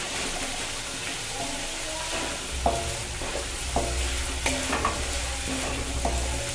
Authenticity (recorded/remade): recorded